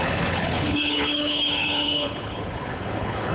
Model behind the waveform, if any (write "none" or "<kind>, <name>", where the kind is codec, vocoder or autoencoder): codec, HILCodec